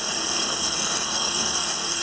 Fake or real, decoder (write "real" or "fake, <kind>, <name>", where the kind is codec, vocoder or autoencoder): fake, codec, SNAC